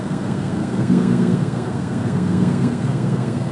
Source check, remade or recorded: remade